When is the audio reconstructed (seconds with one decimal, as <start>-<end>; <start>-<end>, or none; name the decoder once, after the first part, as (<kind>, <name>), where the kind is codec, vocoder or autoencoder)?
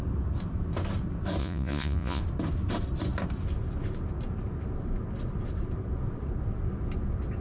1.4-2.2 (vocoder, Vocos)